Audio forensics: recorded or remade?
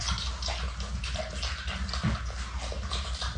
recorded